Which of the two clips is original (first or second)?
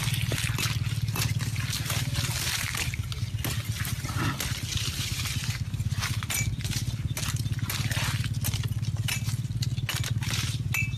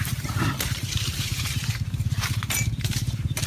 first